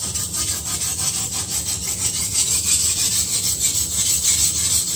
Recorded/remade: recorded